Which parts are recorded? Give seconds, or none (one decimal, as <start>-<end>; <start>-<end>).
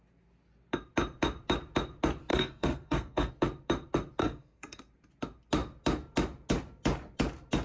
0.0-2.3; 3.3-4.2; 4.8-7.6